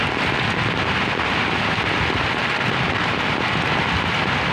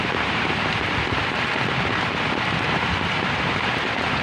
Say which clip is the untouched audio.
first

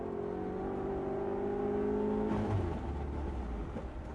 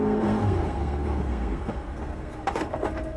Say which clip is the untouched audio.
first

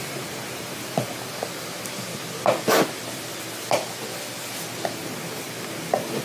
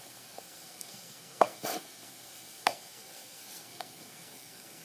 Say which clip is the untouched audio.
first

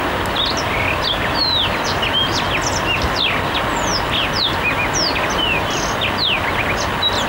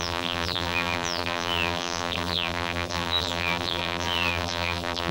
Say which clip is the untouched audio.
first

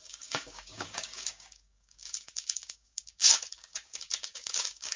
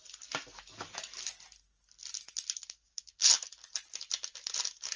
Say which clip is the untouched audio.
second